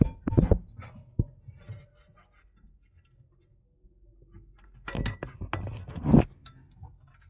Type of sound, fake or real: real